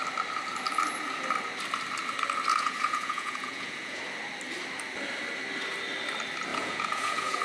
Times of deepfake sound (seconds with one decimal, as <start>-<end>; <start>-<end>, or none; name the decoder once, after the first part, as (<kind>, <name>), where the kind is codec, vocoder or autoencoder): 2.5-4.0 (vocoder, Vocos); 6.5-7.4